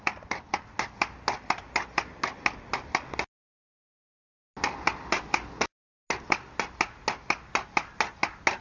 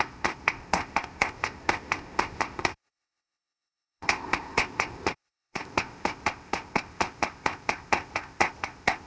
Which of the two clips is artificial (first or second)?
second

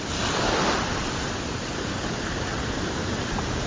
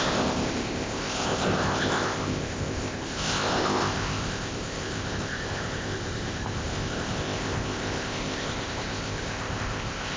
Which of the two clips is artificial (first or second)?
second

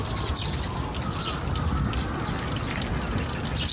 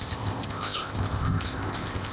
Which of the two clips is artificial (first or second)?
second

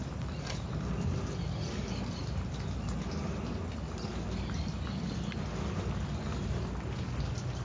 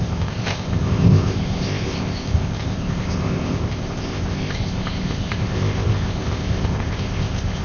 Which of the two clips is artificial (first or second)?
second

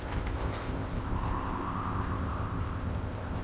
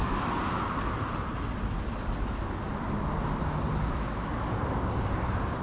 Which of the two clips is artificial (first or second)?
first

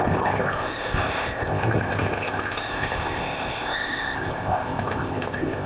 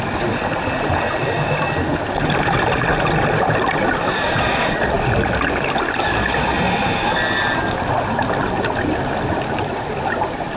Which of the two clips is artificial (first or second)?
first